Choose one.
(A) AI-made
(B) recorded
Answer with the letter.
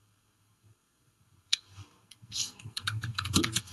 A